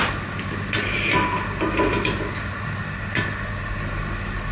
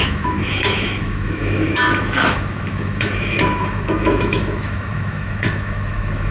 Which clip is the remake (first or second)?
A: second